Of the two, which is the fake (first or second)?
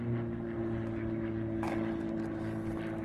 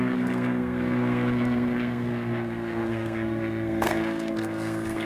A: second